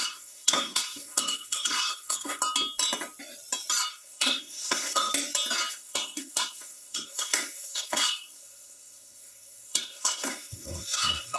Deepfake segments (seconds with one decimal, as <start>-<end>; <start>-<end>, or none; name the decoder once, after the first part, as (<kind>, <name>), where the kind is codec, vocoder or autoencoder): 0.0-2.4 (codec, SNAC); 3.9-5.1; 5.7-11.4

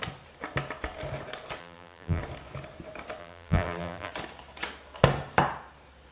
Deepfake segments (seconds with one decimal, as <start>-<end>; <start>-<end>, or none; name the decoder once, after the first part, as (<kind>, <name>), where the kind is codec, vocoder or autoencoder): 1.6-2.2 (vocoder, BigVGAN v2); 3.2-4.1

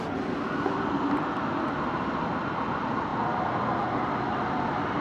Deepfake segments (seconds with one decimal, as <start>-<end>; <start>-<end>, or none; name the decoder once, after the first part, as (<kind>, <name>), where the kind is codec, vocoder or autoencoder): none